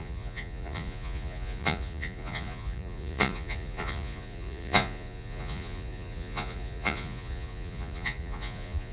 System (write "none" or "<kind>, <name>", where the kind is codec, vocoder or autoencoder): vocoder, Vocos